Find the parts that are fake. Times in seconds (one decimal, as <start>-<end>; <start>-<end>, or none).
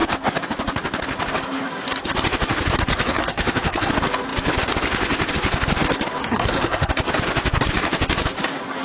2.9-3.9; 6.2-6.9